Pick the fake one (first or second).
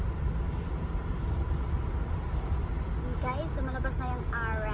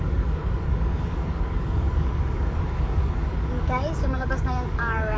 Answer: second